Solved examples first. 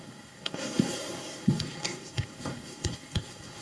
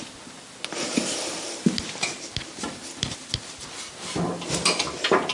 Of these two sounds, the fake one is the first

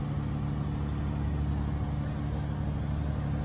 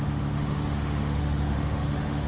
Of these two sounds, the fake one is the second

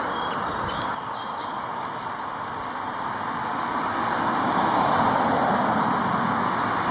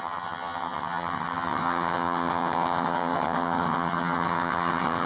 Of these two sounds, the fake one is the second